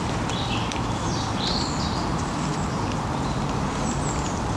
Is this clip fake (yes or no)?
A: yes